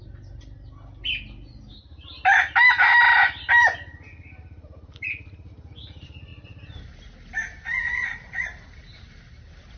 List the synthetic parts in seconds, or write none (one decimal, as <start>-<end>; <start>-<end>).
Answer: none